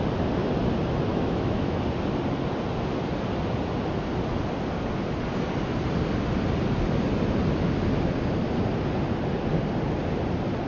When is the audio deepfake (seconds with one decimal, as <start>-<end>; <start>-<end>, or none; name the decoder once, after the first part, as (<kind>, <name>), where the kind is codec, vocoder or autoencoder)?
1.1-1.8 (autoencoder, DAC-VAE)